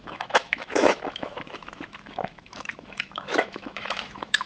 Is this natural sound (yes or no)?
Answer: no